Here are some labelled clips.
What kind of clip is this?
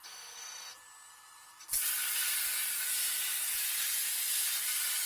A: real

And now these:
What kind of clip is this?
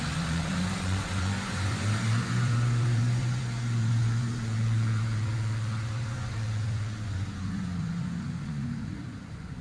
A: fake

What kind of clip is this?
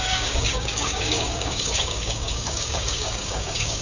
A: fake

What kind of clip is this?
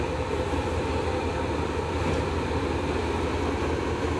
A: real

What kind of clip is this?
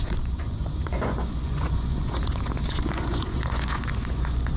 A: fake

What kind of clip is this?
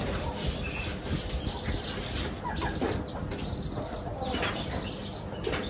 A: real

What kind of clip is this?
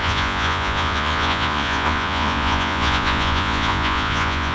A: fake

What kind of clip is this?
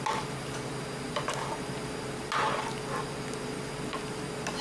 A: real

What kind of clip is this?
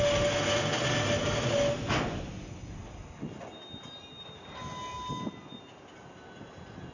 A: real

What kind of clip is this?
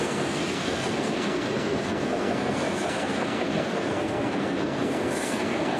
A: fake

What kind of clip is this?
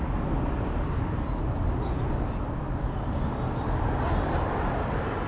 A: real